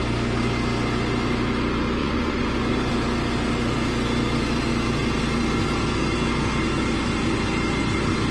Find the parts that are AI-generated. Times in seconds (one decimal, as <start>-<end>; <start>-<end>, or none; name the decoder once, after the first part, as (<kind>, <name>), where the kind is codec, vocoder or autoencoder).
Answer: 2.0-2.9 (vocoder, Vocos)